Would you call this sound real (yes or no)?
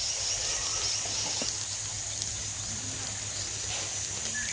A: yes